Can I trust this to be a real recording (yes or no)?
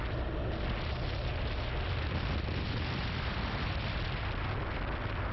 yes